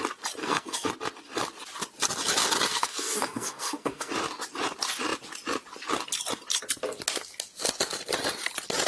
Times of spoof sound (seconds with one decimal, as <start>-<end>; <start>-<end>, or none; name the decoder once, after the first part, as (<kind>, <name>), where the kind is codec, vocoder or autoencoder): 0.4-0.9 (codec, SNAC); 2.7-4.1